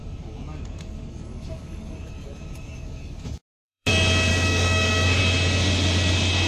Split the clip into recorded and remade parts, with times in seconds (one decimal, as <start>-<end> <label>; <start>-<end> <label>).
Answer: 0.0-3.9 remade; 3.9-4.3 recorded; 4.3-5.2 remade; 5.2-6.5 recorded